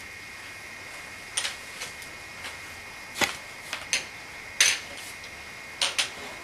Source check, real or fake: real